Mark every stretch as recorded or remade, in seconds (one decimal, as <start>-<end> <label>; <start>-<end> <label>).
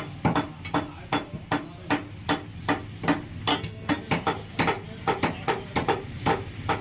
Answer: 0.0-3.5 recorded; 3.5-4.0 remade; 4.0-6.8 recorded